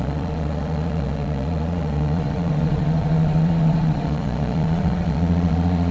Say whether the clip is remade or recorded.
remade